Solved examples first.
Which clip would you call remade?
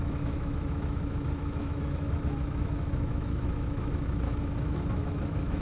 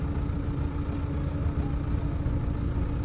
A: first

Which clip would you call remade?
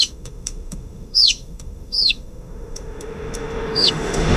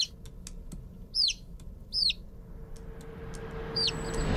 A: first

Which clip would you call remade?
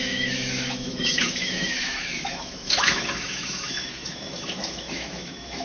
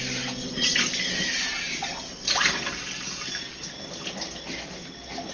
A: first